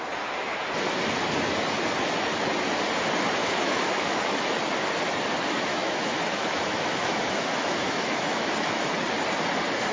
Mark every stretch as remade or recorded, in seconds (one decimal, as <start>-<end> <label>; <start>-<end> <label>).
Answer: 0.0-3.4 recorded; 3.4-4.2 remade; 4.2-5.7 recorded; 5.7-8.5 remade; 8.5-9.9 recorded

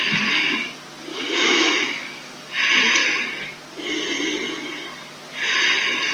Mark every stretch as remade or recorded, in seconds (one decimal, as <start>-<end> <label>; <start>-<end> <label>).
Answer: 0.0-1.1 recorded; 1.1-2.5 remade; 2.5-6.1 recorded